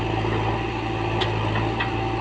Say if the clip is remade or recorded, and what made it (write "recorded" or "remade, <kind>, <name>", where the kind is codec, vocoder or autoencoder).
recorded